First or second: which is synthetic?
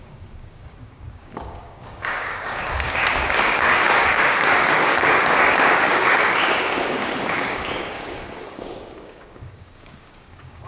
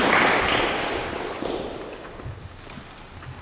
first